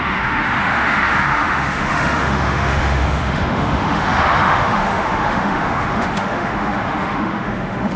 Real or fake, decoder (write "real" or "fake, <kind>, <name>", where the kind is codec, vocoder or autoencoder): fake, autoencoder, DAC-VAE